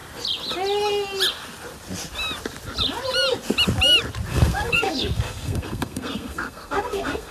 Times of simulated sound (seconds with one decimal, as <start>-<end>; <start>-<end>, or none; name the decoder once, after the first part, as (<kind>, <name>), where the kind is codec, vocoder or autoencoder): 4.3-7.3 (codec, SNAC)